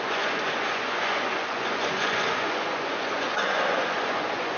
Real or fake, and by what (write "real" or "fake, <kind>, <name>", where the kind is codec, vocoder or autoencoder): fake, vocoder, Vocos